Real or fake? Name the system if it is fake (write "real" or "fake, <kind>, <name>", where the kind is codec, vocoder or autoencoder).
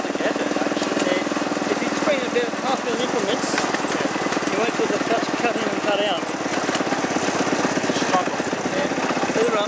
real